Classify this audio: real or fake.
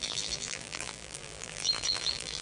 fake